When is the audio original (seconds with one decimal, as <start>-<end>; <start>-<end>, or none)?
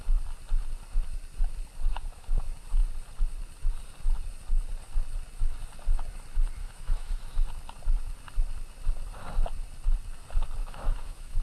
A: 0.0-1.9; 2.4-6.6; 7.2-10.6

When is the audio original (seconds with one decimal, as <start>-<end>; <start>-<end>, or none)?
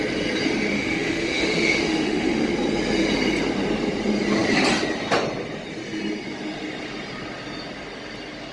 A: 0.0-0.7; 2.5-8.5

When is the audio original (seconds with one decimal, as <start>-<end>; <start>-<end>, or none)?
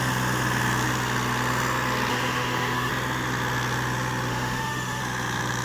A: 0.0-2.1; 2.9-4.3; 5.0-5.6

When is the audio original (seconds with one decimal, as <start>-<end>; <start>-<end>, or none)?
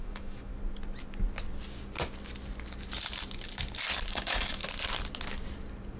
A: 0.5-4.1; 4.6-6.0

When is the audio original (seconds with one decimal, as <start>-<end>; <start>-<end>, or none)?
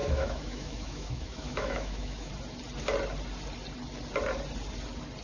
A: 2.3-5.2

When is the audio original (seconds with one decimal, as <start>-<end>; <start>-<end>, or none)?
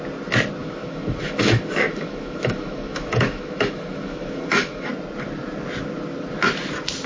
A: 0.0-0.6; 4.9-7.1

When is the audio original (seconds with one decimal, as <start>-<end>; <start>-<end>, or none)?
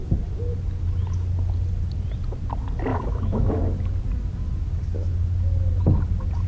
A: 0.0-2.9; 3.6-6.5